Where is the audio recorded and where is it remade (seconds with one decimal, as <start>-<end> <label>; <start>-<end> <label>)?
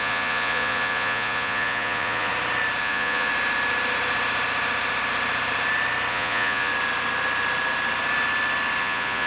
0.0-2.3 remade; 2.3-2.8 recorded; 2.8-3.3 remade; 3.3-6.1 recorded; 6.1-6.7 remade; 6.7-8.8 recorded; 8.8-9.3 remade